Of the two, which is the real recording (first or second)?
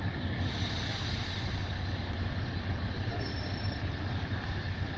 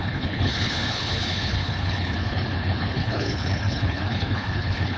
first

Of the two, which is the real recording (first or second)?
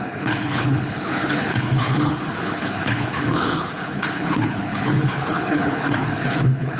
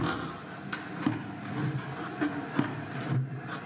second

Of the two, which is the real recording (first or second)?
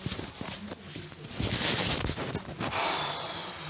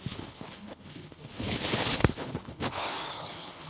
first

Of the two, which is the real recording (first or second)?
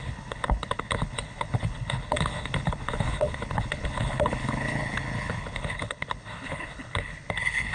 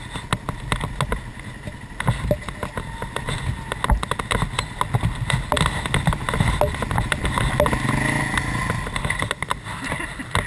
second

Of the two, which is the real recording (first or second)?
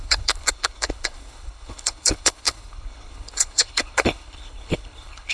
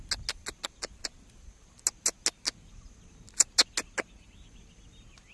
second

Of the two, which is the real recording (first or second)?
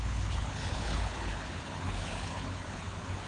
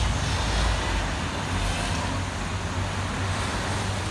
second